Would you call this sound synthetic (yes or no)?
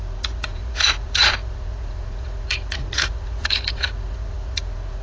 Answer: yes